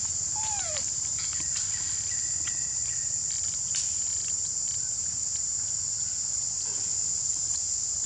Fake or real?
real